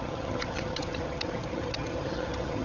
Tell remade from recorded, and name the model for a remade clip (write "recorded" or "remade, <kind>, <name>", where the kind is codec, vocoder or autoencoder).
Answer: remade, vocoder, HiFi-GAN